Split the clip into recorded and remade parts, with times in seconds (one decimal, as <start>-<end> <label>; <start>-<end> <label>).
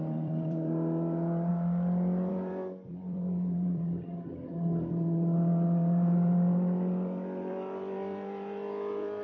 0.0-1.5 remade; 1.5-2.3 recorded; 2.3-9.2 remade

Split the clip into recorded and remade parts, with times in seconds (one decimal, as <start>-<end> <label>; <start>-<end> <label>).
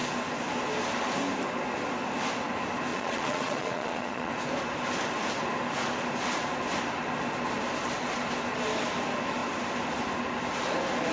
0.0-2.9 recorded; 2.9-4.3 remade; 4.3-11.1 recorded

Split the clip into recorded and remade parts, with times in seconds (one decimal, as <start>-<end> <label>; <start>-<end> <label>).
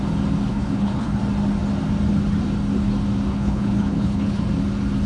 0.0-0.5 recorded; 0.5-1.2 remade; 1.2-3.3 recorded; 3.3-4.4 remade; 4.4-5.1 recorded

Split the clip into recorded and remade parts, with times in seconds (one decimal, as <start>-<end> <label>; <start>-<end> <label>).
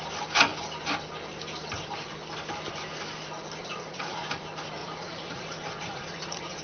0.0-3.6 recorded; 3.6-4.2 remade; 4.2-4.8 recorded; 4.8-6.6 remade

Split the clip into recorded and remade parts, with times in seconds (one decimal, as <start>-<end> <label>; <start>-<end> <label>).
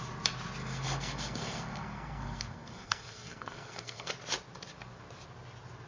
0.0-0.6 recorded; 0.6-4.1 remade; 4.1-5.9 recorded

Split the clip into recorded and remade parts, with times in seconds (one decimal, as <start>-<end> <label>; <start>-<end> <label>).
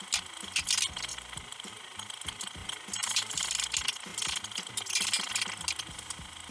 0.0-1.1 recorded; 1.1-1.7 remade; 1.7-2.6 recorded; 2.6-3.4 remade; 3.4-6.5 recorded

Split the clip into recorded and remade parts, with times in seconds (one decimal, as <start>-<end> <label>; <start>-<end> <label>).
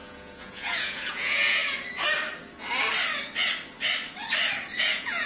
0.0-1.6 remade; 1.6-4.8 recorded; 4.8-5.3 remade